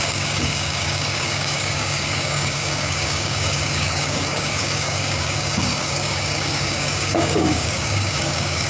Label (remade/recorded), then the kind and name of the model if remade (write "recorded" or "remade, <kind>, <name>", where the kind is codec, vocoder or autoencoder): remade, codec, DAC